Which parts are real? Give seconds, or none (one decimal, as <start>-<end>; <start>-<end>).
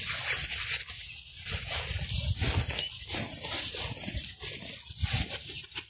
0.0-5.9